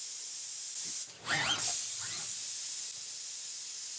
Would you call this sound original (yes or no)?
yes